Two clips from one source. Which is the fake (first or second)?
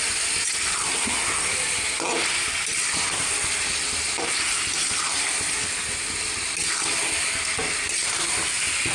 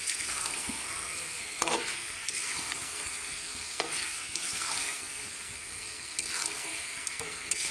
second